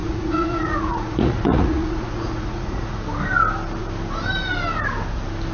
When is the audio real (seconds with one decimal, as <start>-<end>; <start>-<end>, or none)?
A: 3.0-5.5